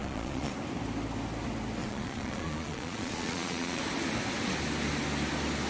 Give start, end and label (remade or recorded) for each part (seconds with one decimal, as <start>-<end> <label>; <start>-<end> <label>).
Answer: 0.0-0.5 remade; 0.5-1.8 recorded; 1.8-3.8 remade; 3.8-5.7 recorded